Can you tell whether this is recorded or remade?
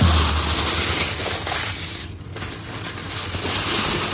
recorded